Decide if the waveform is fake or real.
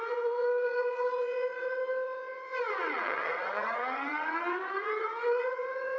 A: fake